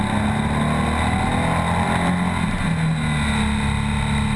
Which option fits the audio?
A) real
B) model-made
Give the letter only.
A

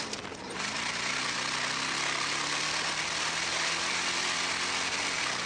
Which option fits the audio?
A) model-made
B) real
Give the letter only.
B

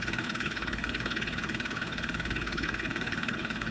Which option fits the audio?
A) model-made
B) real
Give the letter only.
A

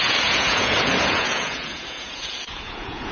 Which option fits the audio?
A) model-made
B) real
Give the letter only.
A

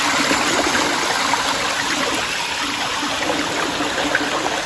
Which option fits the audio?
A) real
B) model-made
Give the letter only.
A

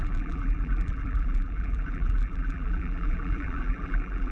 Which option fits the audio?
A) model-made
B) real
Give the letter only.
A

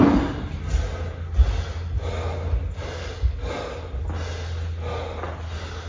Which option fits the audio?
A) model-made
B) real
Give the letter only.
B